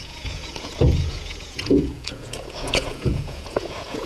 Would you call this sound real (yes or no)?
no